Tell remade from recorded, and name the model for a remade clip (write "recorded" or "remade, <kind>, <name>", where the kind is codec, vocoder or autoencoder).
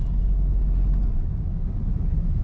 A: recorded